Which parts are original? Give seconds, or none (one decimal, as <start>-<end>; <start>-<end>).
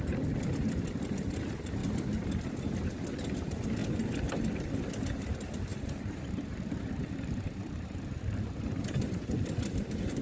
0.0-5.7; 9.2-10.2